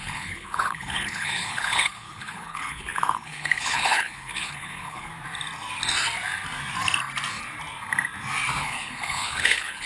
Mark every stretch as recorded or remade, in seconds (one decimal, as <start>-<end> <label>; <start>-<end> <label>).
0.0-5.1 remade; 5.1-8.6 recorded; 8.6-9.9 remade